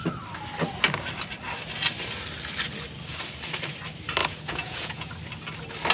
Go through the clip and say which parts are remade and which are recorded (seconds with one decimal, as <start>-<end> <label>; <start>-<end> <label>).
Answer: 0.0-4.2 recorded; 4.2-5.1 remade; 5.1-5.9 recorded